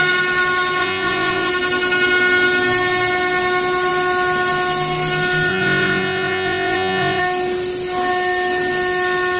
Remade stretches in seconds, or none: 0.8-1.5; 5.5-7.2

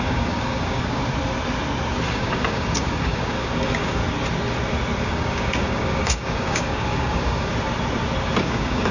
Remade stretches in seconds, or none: 0.0-1.0; 2.1-4.0; 5.0-7.5; 8.4-8.9